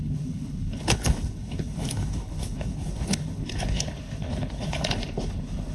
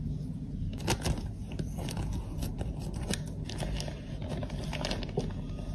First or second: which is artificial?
first